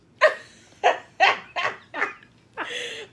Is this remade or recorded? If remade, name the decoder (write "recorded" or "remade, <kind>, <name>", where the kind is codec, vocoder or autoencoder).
remade, vocoder, BigVGAN v2